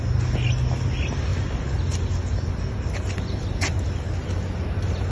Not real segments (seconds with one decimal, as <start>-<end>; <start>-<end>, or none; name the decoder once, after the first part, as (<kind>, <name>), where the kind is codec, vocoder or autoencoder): none